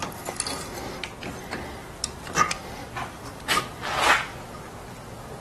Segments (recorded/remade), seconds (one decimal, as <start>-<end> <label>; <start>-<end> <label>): 0.0-5.4 recorded